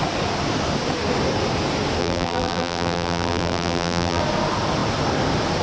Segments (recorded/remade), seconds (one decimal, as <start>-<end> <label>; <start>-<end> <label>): 0.0-2.0 recorded; 2.0-4.2 remade; 4.2-5.6 recorded

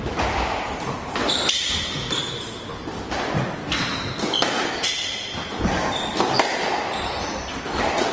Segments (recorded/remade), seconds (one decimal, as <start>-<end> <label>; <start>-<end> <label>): 0.0-3.6 remade; 3.6-4.4 recorded; 4.4-8.1 remade